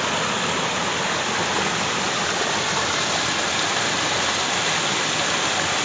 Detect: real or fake real